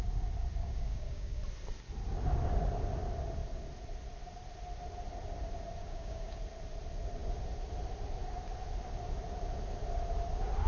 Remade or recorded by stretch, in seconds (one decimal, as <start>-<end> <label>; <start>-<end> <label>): 0.0-0.6 recorded; 0.6-1.4 remade; 1.4-5.8 recorded; 5.8-6.4 remade; 6.4-10.7 recorded